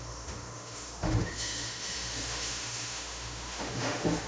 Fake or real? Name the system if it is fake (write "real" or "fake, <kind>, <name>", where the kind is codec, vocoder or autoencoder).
fake, autoencoder, DAC-VAE